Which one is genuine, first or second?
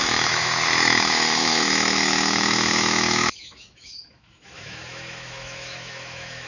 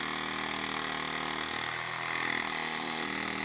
second